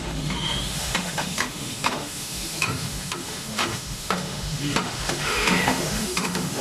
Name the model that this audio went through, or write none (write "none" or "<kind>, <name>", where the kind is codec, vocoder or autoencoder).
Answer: autoencoder, DAC-VAE